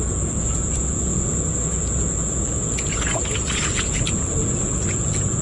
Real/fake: fake